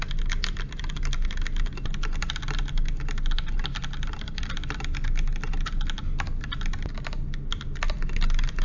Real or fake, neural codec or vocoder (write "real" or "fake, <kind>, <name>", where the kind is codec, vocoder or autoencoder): real